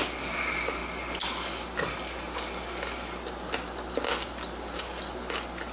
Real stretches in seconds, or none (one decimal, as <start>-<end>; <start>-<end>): 0.0-5.7

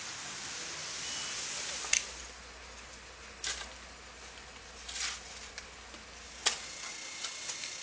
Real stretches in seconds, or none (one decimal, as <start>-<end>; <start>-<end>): 0.0-7.8

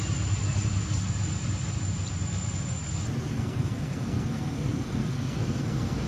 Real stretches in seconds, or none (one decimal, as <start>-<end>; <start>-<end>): 0.0-3.3

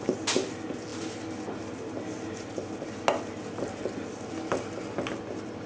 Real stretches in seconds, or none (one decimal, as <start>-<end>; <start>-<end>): 0.0-5.7

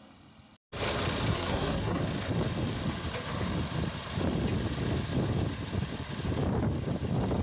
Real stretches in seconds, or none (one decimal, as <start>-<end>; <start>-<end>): 0.0-1.3; 2.0-7.4

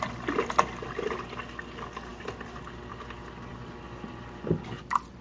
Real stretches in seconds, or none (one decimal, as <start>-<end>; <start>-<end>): 0.0-5.2